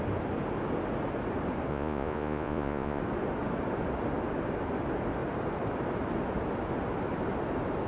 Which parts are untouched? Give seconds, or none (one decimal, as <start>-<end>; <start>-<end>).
0.0-1.7; 3.0-7.9